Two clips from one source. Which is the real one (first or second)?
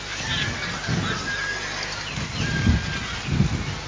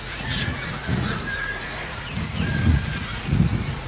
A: first